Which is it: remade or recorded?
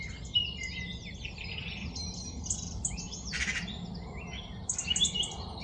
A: recorded